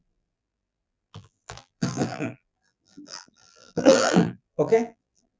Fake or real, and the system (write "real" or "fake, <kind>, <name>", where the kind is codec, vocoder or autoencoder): fake, vocoder, BigVGAN v2